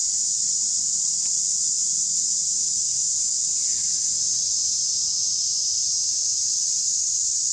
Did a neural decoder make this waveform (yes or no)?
no